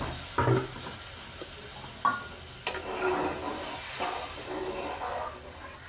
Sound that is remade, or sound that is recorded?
recorded